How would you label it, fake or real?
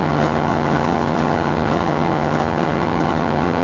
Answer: fake